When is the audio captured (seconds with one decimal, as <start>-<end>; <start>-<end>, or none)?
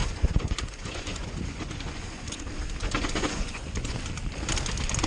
2.4-2.8; 4.0-5.1